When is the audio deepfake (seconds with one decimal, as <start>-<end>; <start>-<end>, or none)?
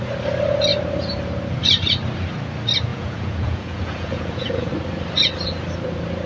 2.9-4.7